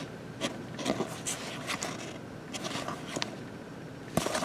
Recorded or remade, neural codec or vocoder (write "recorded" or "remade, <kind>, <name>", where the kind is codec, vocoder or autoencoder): recorded